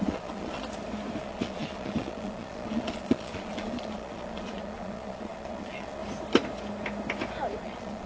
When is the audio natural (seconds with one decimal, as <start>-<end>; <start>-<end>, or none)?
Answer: 0.6-1.2; 6.0-7.6